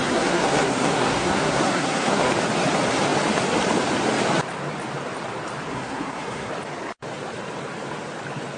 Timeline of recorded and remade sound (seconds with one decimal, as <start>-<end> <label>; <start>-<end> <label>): 0.0-2.3 remade; 2.3-5.7 recorded; 5.7-6.5 remade; 6.5-8.6 recorded